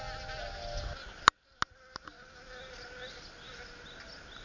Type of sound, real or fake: real